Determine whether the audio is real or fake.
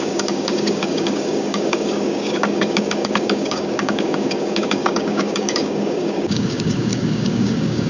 fake